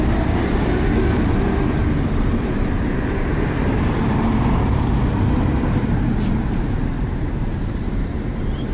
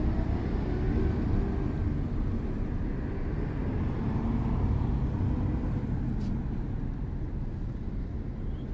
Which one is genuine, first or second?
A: second